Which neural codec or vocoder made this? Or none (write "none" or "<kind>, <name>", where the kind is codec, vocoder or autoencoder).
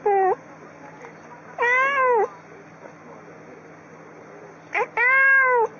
none